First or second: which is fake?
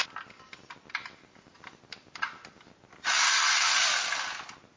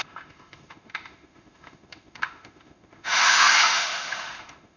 second